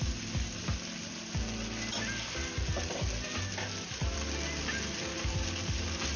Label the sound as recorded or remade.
recorded